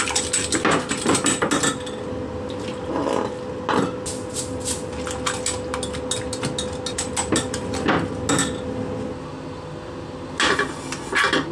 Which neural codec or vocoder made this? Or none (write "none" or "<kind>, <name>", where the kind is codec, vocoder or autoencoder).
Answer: none